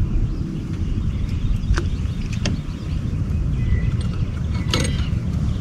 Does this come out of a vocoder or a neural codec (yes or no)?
yes